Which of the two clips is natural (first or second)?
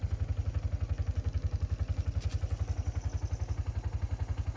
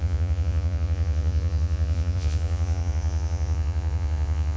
first